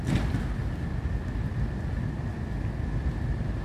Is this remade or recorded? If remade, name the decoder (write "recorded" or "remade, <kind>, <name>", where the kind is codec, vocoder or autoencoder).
recorded